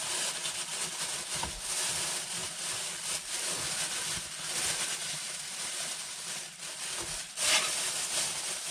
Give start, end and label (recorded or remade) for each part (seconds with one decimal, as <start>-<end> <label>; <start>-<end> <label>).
0.0-2.4 recorded; 2.4-3.7 remade; 3.7-8.7 recorded